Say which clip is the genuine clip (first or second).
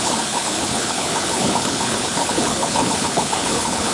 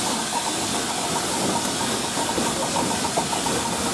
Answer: second